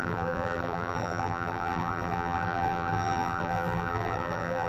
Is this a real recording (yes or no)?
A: no